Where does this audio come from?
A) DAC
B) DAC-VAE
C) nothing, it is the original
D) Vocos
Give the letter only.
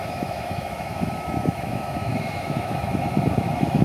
B